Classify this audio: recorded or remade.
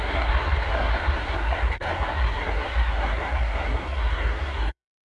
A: remade